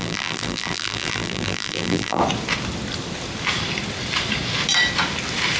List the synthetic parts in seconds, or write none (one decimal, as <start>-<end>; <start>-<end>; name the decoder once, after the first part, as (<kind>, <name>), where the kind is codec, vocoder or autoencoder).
0.0-2.2 (vocoder, BigVGAN v2)